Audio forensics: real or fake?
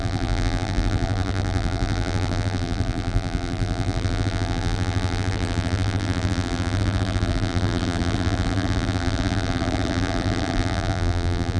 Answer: fake